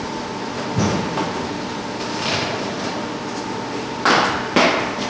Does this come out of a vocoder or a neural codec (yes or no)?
yes